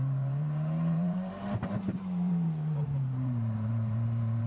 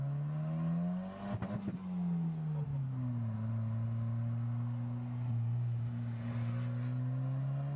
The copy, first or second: first